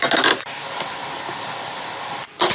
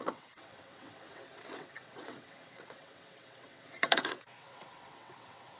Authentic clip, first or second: first